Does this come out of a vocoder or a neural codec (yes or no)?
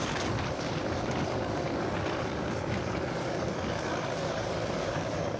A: yes